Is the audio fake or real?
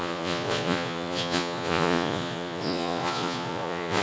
fake